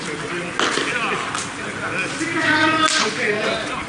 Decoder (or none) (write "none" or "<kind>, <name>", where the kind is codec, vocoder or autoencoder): none